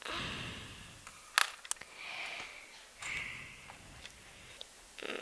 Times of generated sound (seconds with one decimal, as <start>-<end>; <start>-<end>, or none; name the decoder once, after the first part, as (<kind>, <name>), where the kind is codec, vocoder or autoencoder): none